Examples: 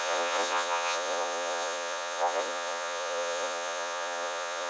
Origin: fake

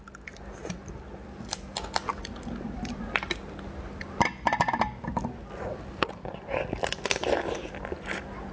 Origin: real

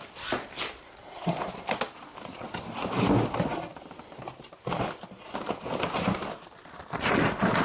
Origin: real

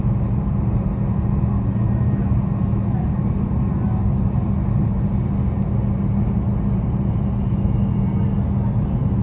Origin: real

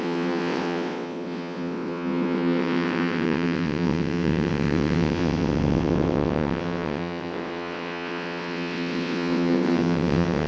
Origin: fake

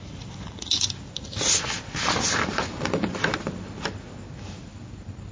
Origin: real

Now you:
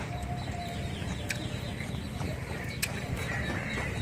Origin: fake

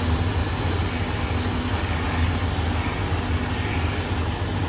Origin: real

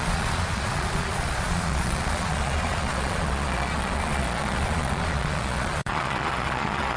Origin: fake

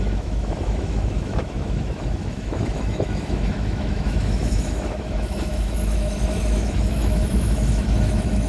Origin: fake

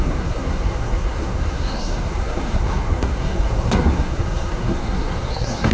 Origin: fake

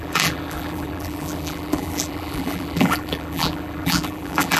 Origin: fake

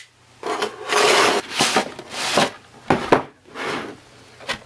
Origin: real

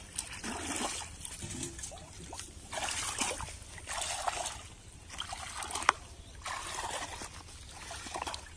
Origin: real